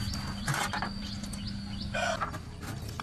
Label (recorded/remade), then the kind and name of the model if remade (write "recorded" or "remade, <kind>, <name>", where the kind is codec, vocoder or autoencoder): recorded